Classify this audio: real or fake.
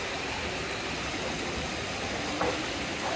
real